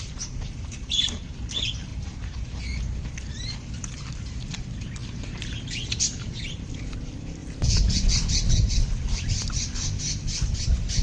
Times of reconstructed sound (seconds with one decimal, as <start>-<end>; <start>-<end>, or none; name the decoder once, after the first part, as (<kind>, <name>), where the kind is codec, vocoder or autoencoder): 0.0-1.9 (vocoder, BigVGAN v2); 2.8-7.4; 8.7-11.0